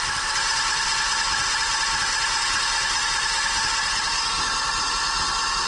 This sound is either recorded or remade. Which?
recorded